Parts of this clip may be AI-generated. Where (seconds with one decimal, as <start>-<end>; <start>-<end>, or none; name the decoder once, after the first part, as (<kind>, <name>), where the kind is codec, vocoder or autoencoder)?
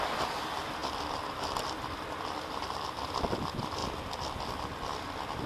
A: none